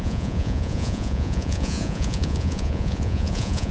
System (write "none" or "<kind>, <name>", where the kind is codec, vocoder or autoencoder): vocoder, Vocos